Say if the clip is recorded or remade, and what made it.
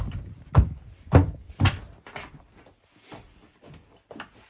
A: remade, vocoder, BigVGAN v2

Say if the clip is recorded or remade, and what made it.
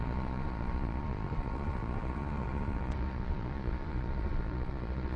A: remade, vocoder, Vocos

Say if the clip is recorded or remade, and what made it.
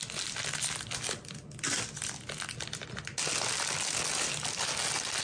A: recorded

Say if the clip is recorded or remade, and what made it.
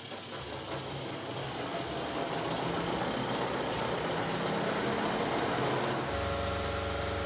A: recorded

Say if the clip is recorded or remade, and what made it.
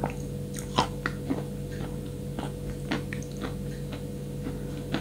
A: recorded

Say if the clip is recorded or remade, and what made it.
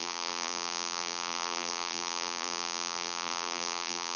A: remade, vocoder, BigVGAN v2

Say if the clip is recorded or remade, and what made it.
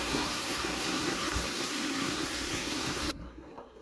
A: remade, codec, SNAC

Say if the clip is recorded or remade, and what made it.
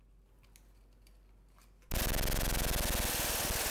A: recorded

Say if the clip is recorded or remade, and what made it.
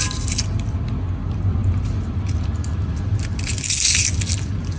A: recorded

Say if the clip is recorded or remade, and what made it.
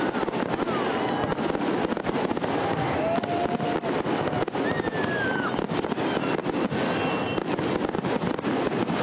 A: recorded